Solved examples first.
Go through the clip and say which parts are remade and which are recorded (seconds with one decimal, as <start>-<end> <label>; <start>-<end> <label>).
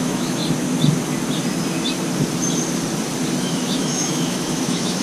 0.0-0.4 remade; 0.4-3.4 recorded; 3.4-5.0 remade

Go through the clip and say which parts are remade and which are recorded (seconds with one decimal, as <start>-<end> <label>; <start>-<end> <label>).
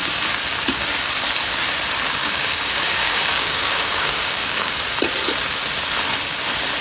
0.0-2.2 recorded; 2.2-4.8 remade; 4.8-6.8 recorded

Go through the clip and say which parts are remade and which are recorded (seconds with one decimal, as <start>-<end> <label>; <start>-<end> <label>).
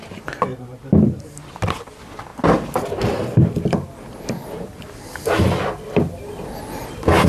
0.0-0.5 recorded; 0.5-1.8 remade; 1.8-7.3 recorded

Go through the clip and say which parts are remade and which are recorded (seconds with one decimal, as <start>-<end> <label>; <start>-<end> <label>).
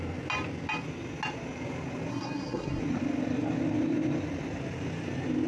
0.0-2.1 recorded; 2.1-2.8 remade; 2.8-5.5 recorded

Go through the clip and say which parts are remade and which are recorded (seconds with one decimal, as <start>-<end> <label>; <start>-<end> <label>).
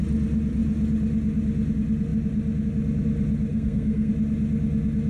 0.0-3.5 recorded; 3.5-4.1 remade; 4.1-5.1 recorded